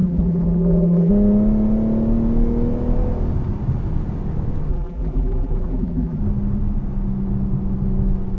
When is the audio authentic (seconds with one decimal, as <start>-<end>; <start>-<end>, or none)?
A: 1.1-4.7; 6.2-8.4